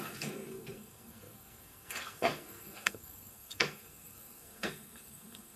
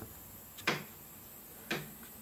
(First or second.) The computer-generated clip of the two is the first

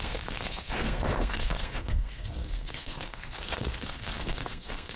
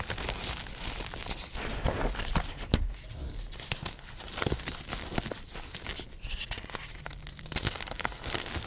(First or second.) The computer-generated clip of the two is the first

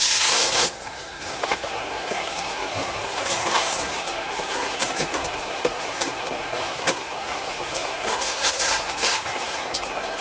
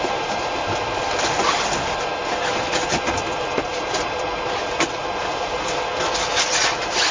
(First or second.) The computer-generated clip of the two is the first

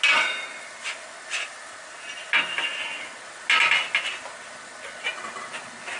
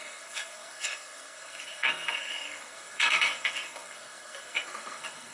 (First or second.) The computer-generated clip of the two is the second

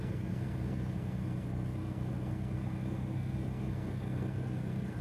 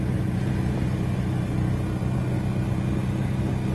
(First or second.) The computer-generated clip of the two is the first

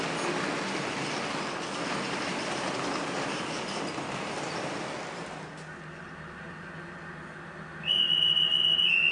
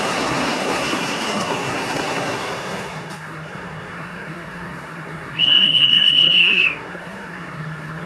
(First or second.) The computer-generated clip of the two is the second